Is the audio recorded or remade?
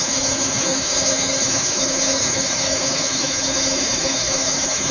remade